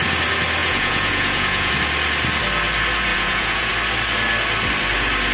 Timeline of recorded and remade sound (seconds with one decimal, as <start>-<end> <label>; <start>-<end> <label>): 0.0-0.6 recorded; 0.6-1.7 remade; 1.7-3.1 recorded; 3.1-3.7 remade; 3.7-5.3 recorded